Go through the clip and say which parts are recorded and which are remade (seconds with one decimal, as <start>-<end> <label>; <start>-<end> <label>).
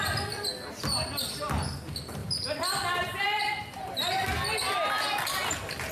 0.0-2.2 recorded; 2.2-4.5 remade; 4.5-5.9 recorded